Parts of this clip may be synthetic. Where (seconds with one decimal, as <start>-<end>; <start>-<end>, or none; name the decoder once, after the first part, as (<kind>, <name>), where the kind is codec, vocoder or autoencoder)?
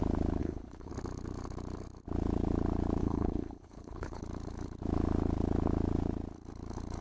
0.4-0.9 (codec, HILCodec); 3.0-4.2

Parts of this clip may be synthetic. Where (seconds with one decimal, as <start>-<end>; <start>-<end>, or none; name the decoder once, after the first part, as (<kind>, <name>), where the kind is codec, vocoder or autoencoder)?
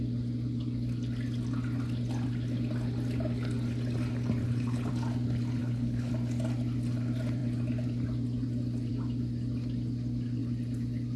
4.4-4.9 (codec, HILCodec); 5.6-6.1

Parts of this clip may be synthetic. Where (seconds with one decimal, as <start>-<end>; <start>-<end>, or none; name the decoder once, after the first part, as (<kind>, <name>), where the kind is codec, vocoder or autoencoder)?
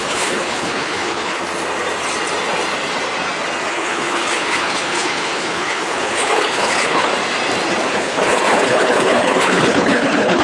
0.0-1.4 (codec, HILCodec); 3.7-7.1; 7.9-10.4